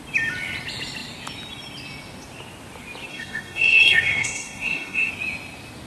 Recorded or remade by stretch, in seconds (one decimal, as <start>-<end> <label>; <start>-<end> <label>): 0.0-3.1 recorded; 3.1-5.1 remade; 5.1-5.9 recorded